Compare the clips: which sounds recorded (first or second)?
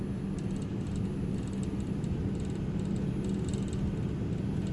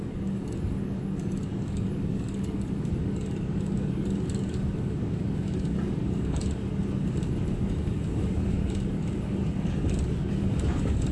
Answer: first